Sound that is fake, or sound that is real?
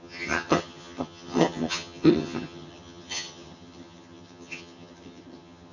fake